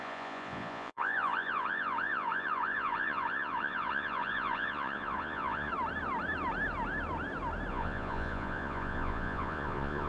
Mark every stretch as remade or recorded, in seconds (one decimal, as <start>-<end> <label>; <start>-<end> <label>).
0.0-5.7 remade; 5.7-7.7 recorded; 7.7-10.1 remade